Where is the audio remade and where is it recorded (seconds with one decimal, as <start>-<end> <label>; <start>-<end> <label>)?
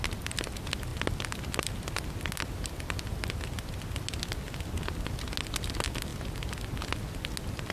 0.0-7.7 recorded